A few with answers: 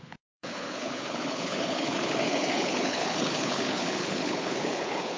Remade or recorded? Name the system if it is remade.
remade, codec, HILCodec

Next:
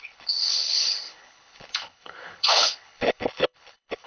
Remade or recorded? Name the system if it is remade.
remade, codec, HILCodec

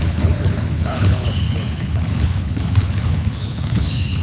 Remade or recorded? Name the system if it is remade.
remade, codec, HILCodec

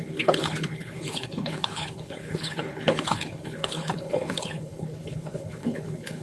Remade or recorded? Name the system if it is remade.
remade, codec, HILCodec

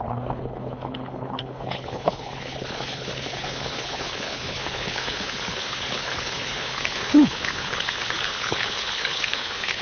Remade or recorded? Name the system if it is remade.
remade, codec, HILCodec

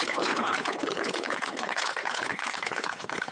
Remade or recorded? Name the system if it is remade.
remade, codec, HILCodec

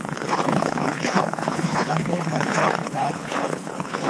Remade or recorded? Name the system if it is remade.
remade, codec, HILCodec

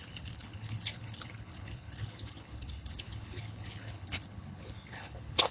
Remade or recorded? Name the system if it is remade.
remade, codec, HILCodec